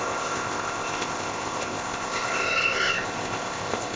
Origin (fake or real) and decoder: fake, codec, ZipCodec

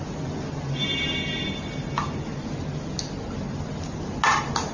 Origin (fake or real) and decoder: real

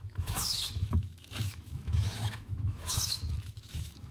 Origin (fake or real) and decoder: fake, autoencoder, DAC-VAE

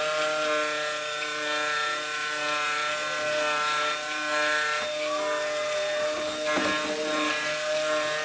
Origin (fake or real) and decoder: real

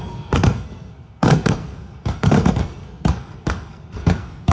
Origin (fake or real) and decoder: fake, codec, SNAC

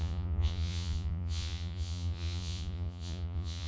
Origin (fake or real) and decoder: fake, vocoder, Vocos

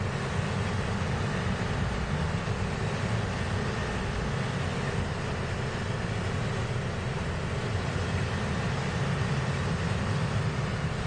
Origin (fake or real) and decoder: real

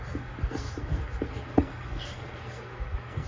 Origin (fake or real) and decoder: fake, codec, SNAC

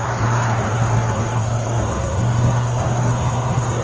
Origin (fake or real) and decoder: fake, codec, SNAC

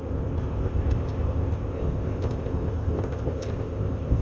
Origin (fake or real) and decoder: fake, codec, ZipCodec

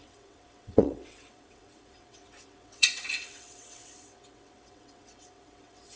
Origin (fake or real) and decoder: fake, vocoder, WaveNeXt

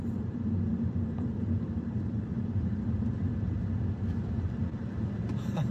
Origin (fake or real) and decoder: fake, vocoder, BigVGAN v2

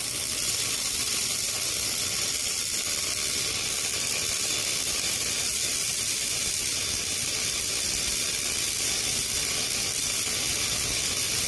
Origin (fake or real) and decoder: real